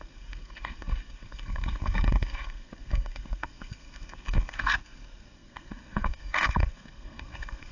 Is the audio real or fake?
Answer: fake